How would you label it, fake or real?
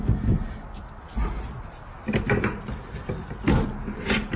real